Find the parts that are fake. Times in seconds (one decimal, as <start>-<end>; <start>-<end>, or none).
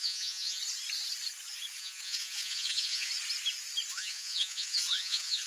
0.0-0.6; 1.8-3.1; 3.9-5.5